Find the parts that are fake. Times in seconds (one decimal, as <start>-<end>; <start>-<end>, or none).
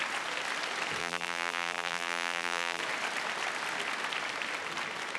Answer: 1.0-2.8